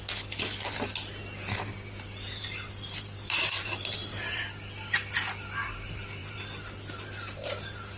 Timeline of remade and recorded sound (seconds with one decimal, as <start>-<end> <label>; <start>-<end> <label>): 0.0-1.2 recorded; 1.2-4.4 remade; 4.4-6.2 recorded; 6.2-7.5 remade; 7.5-8.0 recorded